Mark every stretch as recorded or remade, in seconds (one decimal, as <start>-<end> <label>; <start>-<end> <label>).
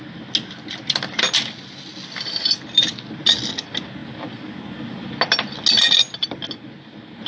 0.0-7.3 recorded